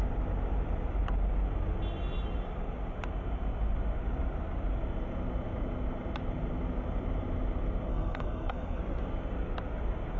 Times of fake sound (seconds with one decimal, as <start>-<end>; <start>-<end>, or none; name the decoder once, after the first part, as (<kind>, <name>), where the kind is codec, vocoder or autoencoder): 7.9-8.8 (codec, SNAC)